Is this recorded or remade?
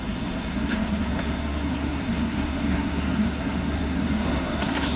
remade